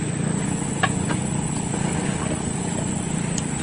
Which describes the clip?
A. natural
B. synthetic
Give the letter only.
B